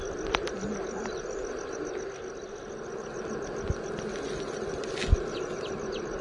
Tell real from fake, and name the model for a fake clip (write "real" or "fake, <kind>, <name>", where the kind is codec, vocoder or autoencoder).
real